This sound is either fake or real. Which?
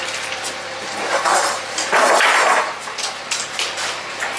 real